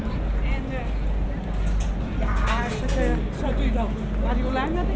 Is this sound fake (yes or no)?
no